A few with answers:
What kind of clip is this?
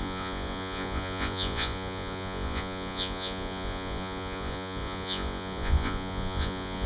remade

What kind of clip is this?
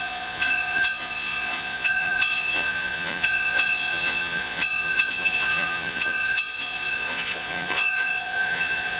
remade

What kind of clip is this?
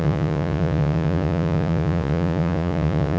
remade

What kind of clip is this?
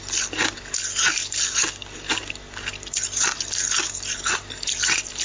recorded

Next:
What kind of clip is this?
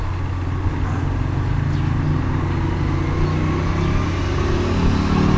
recorded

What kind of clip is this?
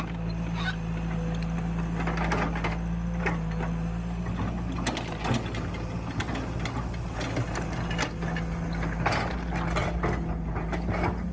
recorded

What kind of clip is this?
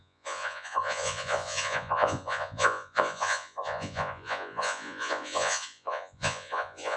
remade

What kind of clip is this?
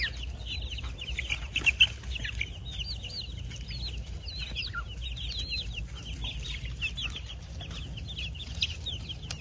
recorded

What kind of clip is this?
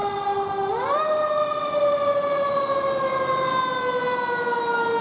recorded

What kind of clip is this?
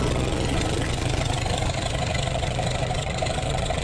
remade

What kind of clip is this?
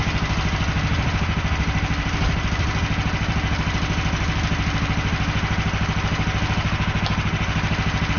recorded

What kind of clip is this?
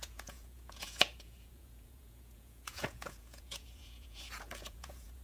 remade